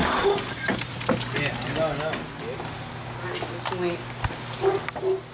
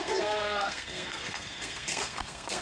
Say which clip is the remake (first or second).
second